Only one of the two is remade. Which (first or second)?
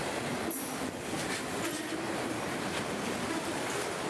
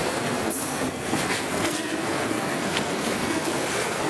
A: second